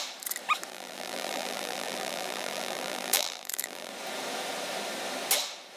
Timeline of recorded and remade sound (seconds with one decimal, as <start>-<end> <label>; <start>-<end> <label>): 0.0-0.7 recorded; 0.7-3.9 remade; 3.9-5.8 recorded